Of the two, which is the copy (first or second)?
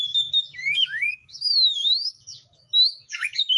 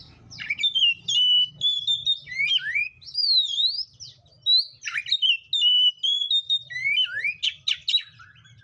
first